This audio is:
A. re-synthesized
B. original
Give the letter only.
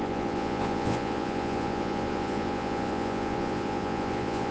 A